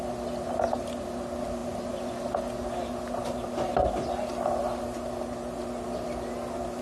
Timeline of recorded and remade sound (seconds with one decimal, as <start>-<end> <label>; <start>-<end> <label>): 0.0-6.8 recorded